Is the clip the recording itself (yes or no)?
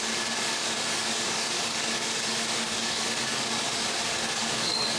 no